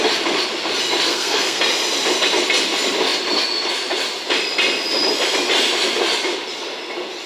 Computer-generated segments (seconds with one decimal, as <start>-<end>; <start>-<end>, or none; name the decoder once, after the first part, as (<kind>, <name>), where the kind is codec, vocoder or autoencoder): 1.1-1.6 (codec, SNAC)